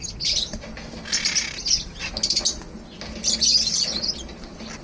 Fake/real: real